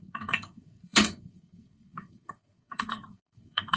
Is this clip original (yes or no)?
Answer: no